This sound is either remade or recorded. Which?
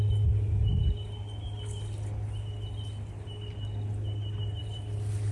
recorded